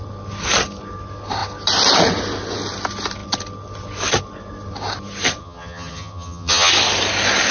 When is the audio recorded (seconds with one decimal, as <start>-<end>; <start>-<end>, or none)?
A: 0.0-5.4; 6.7-7.5